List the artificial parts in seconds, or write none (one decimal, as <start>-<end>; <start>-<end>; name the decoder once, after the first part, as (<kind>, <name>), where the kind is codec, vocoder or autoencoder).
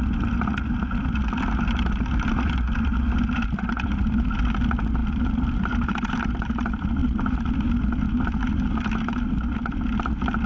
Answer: 5.0-6.3 (vocoder, BigVGAN v2); 7.0-7.5